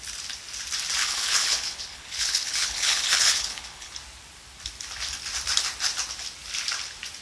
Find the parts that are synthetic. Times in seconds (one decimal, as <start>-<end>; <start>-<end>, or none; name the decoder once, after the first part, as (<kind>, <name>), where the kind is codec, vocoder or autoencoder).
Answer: 1.0-3.9 (codec, HILCodec)